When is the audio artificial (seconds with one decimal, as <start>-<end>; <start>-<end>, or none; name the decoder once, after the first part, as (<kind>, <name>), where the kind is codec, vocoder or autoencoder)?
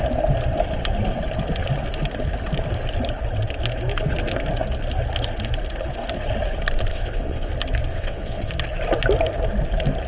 6.9-7.5 (vocoder, WaveNeXt); 7.9-8.5